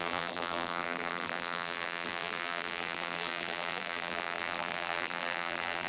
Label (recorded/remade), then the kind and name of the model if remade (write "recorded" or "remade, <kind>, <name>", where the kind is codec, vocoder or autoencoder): remade, vocoder, BigVGAN v2